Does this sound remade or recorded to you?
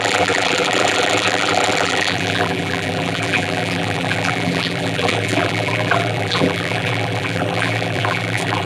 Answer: remade